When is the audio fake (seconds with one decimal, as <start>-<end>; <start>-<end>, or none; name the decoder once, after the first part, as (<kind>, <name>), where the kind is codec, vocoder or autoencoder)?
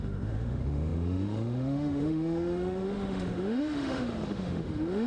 0.0-5.1 (autoencoder, DAC-VAE)